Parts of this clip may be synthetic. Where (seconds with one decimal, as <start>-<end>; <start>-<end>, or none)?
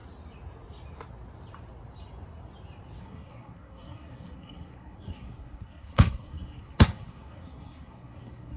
3.0-8.6